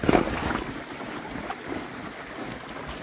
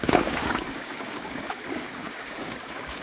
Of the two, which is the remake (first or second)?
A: second